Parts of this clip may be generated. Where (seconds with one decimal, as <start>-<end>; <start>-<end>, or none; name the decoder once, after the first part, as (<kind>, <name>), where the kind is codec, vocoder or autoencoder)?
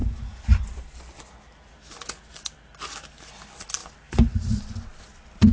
none